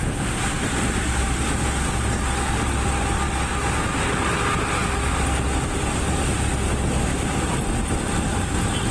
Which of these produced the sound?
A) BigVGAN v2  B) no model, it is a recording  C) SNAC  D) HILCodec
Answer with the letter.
B